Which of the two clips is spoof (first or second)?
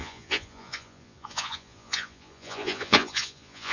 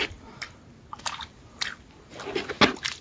first